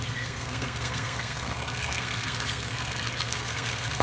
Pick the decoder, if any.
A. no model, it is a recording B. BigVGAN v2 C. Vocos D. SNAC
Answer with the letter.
D